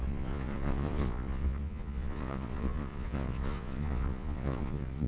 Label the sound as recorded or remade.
remade